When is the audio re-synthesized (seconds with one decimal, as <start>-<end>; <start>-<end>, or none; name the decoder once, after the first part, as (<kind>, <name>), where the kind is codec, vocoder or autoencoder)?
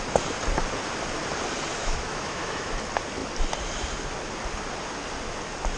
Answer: 1.8-2.7 (autoencoder, DAC-VAE)